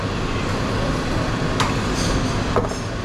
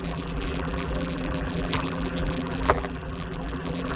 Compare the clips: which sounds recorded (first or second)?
first